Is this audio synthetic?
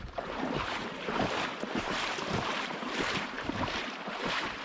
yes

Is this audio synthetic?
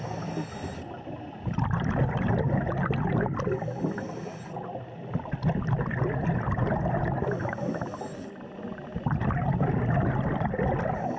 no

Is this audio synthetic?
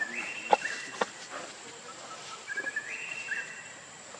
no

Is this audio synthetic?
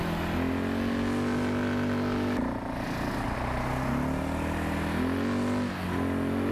no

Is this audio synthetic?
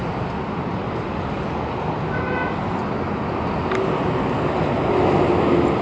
no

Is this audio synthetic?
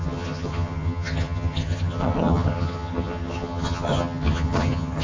yes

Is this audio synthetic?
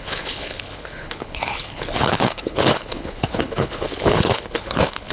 yes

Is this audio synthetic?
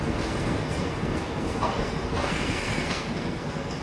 yes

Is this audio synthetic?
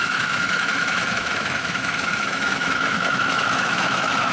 yes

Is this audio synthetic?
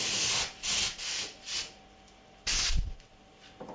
no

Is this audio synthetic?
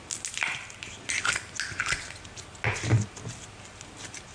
no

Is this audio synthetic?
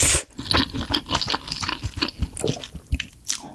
no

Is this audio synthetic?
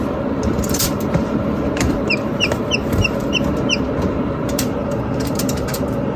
yes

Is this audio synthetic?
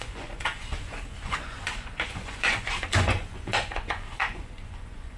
yes